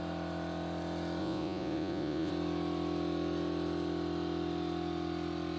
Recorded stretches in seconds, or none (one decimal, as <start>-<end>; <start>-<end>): 0.0-1.2; 2.3-5.6